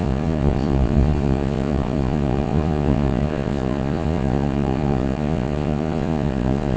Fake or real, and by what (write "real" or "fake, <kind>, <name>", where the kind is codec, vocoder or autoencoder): fake, vocoder, Vocos